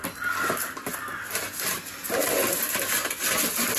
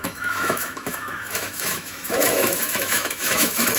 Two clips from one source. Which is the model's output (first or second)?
second